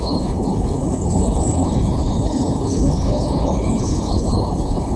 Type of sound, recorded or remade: remade